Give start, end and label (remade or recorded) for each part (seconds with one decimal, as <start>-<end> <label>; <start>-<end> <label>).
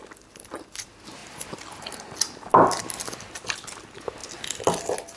0.0-5.2 recorded